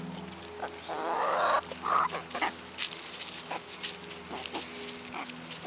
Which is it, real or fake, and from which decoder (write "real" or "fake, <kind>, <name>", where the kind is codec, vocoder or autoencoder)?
real